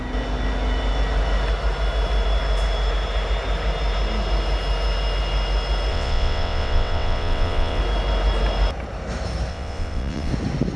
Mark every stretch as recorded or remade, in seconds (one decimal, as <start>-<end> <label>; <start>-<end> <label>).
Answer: 0.0-5.9 recorded; 5.9-7.8 remade; 7.8-9.5 recorded; 9.5-10.3 remade; 10.3-10.8 recorded